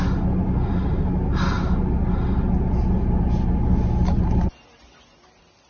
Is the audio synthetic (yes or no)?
no